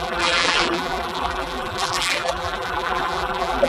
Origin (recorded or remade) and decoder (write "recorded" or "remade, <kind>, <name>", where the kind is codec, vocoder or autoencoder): remade, vocoder, BigVGAN v2